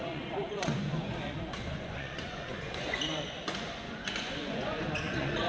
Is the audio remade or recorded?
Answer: remade